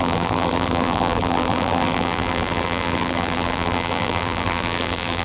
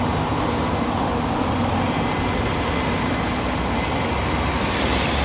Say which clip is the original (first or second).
second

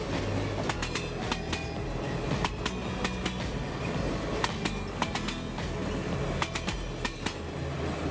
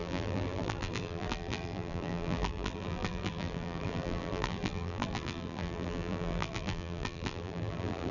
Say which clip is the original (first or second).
first